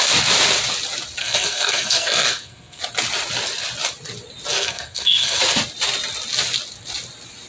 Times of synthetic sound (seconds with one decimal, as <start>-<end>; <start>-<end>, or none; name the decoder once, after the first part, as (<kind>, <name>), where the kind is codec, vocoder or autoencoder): 1.2-2.8 (codec, SNAC); 4.5-5.4